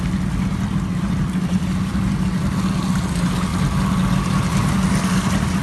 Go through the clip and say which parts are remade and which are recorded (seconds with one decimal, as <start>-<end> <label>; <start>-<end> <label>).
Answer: 0.0-5.6 recorded